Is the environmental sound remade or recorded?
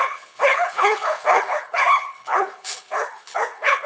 remade